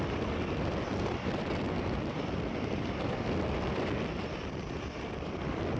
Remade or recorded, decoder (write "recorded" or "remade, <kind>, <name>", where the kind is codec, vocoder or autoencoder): recorded